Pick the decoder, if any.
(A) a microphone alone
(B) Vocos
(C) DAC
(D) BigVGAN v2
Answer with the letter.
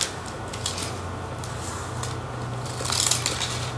A